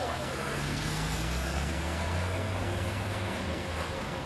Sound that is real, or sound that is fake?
fake